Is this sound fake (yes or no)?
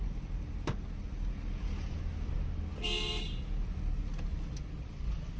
no